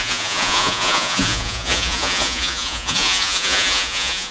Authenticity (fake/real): fake